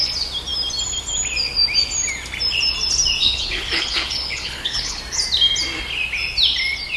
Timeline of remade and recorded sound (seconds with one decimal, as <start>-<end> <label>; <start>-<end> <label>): 0.0-3.2 recorded; 3.2-5.0 remade; 5.0-7.0 recorded